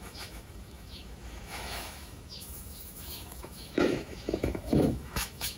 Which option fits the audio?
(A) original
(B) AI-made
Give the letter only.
B